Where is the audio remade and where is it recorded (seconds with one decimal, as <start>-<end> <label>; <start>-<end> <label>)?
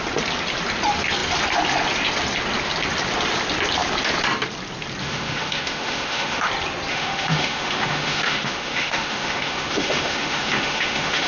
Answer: 0.0-5.0 recorded; 5.0-6.4 remade; 6.4-6.9 recorded; 6.9-11.3 remade